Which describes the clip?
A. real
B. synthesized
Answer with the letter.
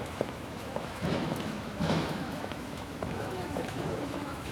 B